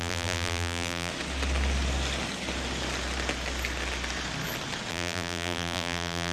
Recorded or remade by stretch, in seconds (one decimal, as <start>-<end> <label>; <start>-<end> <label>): 0.0-1.1 remade; 1.1-4.9 recorded; 4.9-6.3 remade